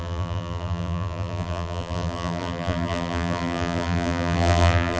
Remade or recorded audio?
remade